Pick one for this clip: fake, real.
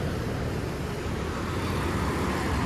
real